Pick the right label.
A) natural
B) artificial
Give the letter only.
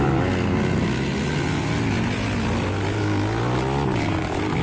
A